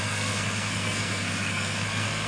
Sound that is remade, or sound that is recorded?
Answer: remade